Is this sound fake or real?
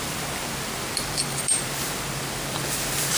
fake